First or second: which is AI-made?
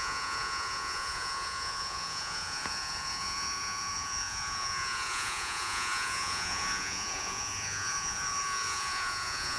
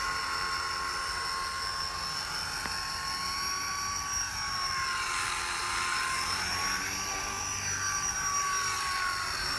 first